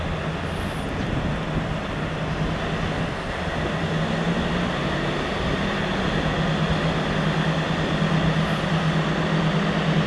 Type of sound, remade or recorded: recorded